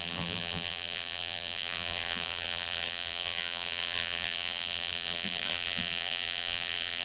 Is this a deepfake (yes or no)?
yes